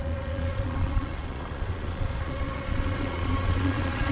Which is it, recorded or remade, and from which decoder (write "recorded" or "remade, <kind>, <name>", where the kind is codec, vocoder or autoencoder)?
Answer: remade, vocoder, Vocos